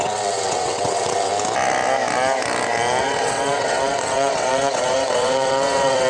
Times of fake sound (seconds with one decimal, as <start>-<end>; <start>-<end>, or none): 0.0-1.3; 3.0-6.1